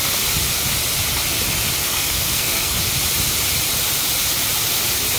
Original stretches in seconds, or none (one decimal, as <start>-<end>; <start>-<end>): 0.0-1.8; 2.8-5.2